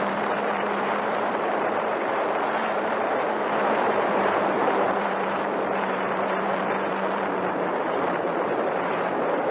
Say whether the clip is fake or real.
fake